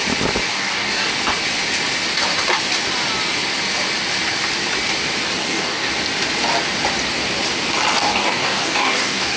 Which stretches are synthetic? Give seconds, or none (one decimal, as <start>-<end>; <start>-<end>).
0.5-1.1; 5.4-5.9; 8.0-9.4